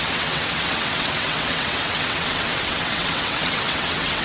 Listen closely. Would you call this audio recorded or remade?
remade